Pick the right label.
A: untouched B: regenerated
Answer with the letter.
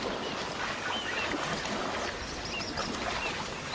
A